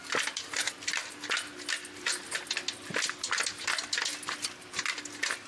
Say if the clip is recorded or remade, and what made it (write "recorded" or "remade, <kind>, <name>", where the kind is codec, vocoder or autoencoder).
recorded